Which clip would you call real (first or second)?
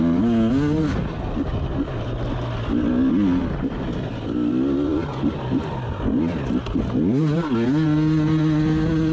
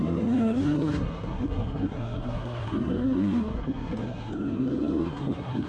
first